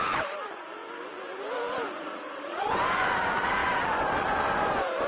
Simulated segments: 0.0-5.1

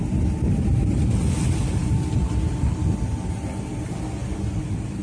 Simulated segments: none